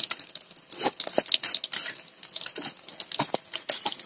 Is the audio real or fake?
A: real